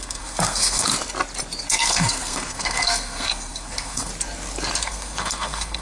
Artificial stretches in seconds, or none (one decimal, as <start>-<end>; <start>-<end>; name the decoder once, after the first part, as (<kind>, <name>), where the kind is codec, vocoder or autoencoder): 0.0-0.9 (codec, SNAC); 1.7-4.1; 4.8-5.8